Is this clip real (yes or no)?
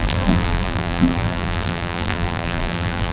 no